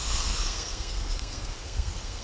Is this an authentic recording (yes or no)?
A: no